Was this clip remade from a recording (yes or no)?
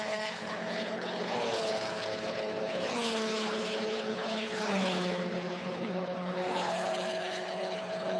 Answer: yes